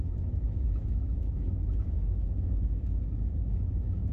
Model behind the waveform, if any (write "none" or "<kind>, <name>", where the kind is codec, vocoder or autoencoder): autoencoder, DAC-VAE